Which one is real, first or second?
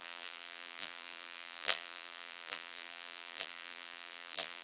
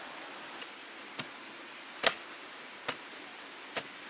second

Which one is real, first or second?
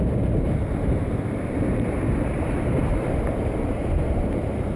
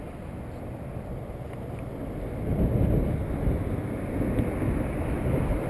second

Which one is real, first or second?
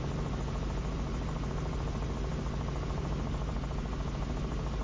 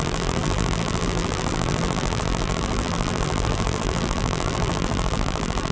first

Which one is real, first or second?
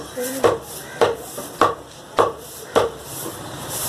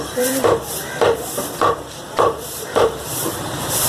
first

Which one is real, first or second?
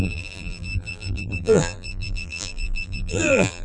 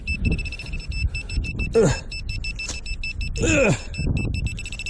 second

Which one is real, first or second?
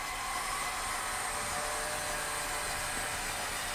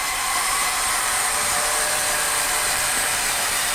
first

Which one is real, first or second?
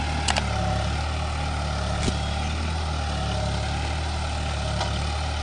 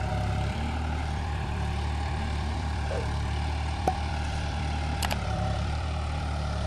first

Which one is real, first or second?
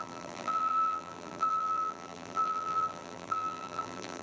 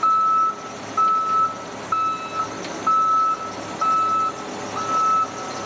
second